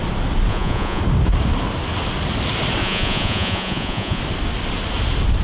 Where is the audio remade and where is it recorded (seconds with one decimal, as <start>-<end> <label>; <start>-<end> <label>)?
0.0-0.5 recorded; 0.5-1.0 remade; 1.0-2.8 recorded; 2.8-4.2 remade; 4.2-5.4 recorded